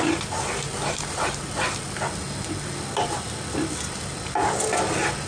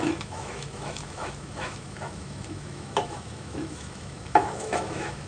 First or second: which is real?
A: first